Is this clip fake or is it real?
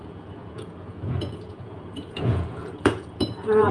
fake